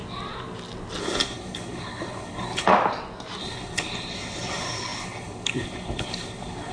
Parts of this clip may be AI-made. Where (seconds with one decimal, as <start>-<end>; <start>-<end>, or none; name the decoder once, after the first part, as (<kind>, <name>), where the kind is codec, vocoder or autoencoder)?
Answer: 1.0-2.7 (codec, HILCodec); 3.4-6.7